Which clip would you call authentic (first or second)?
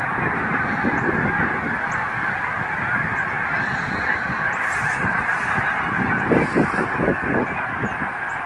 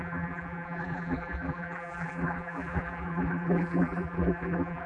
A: first